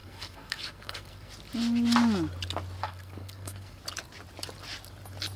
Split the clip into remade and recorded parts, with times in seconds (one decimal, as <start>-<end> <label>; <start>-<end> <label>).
0.0-1.3 remade; 1.3-2.8 recorded; 2.8-3.8 remade; 3.8-5.4 recorded